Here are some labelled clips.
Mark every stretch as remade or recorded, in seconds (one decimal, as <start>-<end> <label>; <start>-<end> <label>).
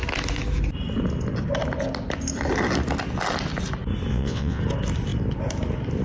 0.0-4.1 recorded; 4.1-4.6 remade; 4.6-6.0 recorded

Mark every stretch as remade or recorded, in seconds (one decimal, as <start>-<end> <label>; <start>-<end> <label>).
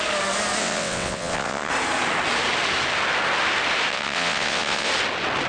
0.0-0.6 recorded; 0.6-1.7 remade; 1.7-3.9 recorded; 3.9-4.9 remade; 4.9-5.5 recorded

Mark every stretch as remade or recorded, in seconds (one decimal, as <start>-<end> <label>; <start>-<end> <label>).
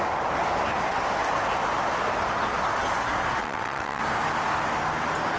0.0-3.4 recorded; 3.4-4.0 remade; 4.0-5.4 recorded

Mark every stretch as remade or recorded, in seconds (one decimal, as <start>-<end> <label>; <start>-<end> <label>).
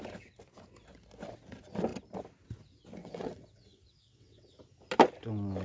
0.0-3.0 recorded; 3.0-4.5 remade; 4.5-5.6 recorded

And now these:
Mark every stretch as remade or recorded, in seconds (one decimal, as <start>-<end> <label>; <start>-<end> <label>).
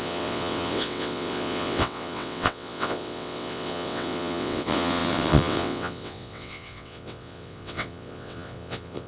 0.0-9.1 remade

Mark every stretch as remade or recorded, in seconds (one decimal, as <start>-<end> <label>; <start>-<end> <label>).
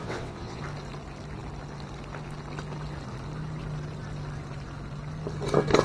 0.0-0.6 remade; 0.6-5.8 recorded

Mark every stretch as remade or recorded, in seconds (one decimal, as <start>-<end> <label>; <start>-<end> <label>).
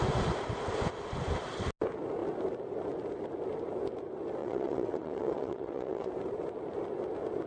0.0-4.4 recorded; 4.4-6.1 remade; 6.1-7.5 recorded